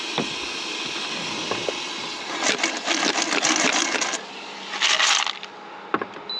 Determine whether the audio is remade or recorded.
recorded